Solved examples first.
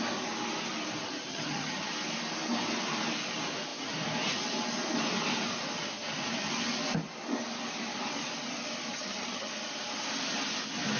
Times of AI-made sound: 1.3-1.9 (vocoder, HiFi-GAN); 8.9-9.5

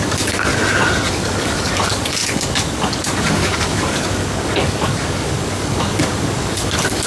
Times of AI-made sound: 0.0-0.5 (codec, DAC); 1.1-7.1

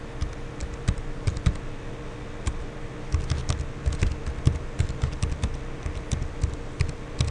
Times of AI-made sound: none

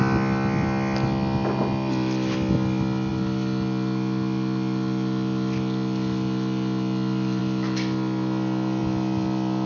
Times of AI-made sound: none

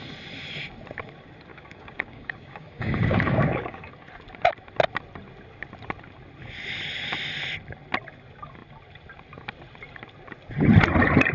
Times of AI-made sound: 1.5-3.9 (codec, DAC)

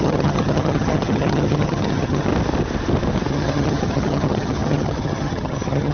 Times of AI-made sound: 0.0-2.3 (vocoder, HiFi-GAN); 3.3-5.9

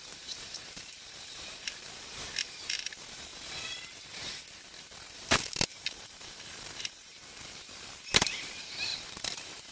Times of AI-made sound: 0.0-3.3 (vocoder, BigVGAN v2); 5.3-9.7

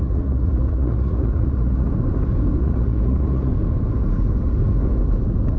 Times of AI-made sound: 0.0-1.9 (vocoder, Vocos); 2.6-3.5